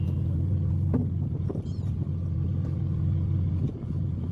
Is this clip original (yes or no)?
yes